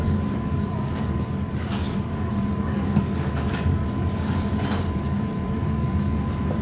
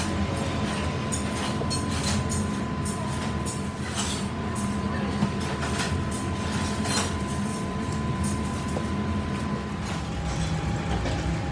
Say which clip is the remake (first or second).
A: first